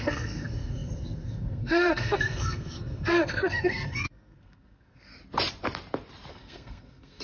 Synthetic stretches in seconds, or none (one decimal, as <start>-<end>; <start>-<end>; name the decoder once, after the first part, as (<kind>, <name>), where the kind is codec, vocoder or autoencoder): 0.0-5.1 (codec, SNAC); 6.3-7.2